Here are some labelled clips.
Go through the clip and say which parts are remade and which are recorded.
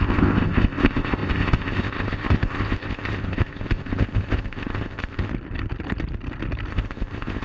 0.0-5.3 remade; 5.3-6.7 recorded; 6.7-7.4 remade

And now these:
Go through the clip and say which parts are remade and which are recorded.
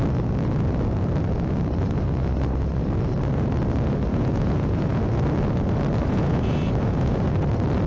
0.0-4.1 recorded; 4.1-5.0 remade; 5.0-6.0 recorded; 6.0-7.2 remade; 7.2-7.9 recorded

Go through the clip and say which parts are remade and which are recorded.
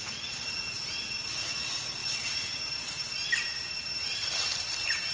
0.0-5.1 recorded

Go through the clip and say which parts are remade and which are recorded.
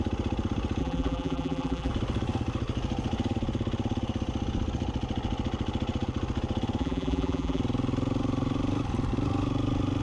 0.0-0.8 recorded; 0.8-1.9 remade; 1.9-6.8 recorded; 6.8-7.6 remade; 7.6-10.0 recorded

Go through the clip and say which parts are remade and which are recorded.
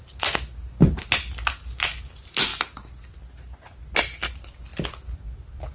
0.0-5.7 recorded